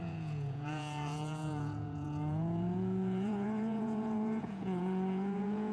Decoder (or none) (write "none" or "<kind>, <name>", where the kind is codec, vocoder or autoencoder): vocoder, Vocos